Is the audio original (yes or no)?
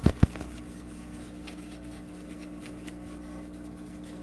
no